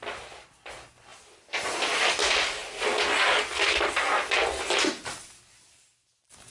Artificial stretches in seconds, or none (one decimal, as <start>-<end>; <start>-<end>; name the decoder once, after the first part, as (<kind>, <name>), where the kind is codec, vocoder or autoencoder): none